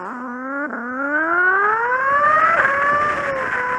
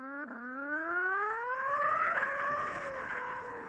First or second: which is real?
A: first